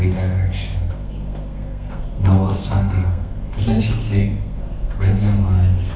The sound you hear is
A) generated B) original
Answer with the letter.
A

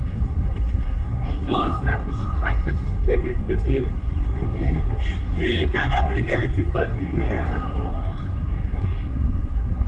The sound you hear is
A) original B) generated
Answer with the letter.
B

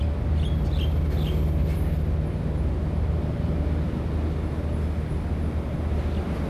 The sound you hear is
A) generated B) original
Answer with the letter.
B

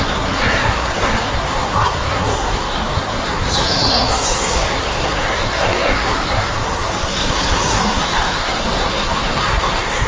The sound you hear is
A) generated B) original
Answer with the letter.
A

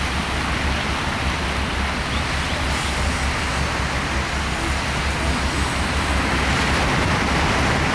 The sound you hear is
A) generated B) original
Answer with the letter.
B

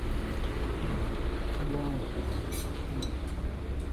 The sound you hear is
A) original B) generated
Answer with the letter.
A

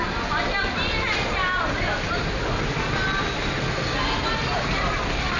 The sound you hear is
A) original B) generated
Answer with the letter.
A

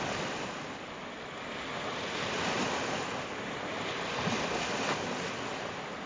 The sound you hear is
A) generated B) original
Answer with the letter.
B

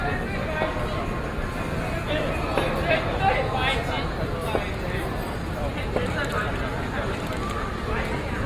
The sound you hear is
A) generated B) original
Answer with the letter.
B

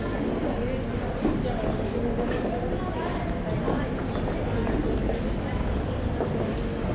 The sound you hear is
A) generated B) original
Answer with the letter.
B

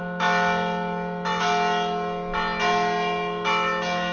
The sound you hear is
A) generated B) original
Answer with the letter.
B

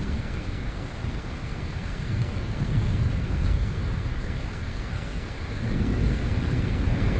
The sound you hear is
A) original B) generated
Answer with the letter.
B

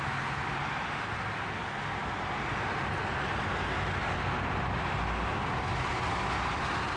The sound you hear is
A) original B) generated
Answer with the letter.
A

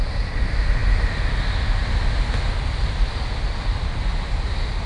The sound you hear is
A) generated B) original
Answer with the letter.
B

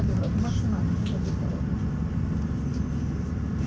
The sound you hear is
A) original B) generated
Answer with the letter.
A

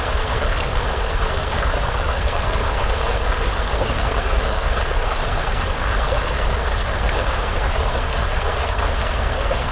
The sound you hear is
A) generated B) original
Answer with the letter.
A